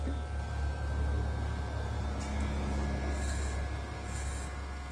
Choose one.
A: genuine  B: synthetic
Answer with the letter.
A